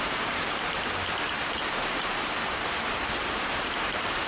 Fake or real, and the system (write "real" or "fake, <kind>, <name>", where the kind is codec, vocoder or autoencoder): fake, vocoder, BigVGAN v2